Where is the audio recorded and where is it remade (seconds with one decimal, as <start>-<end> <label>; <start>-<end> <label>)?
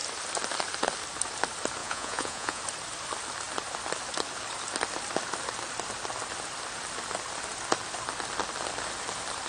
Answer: 0.0-1.8 recorded; 1.8-2.6 remade; 2.6-9.5 recorded